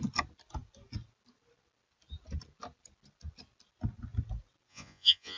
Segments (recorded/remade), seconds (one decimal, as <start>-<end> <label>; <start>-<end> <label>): 0.0-4.7 recorded; 4.7-5.4 remade